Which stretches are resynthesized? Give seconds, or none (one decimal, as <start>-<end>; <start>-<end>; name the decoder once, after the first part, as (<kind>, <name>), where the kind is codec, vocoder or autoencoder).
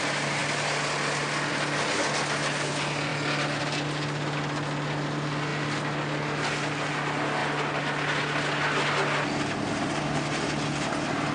none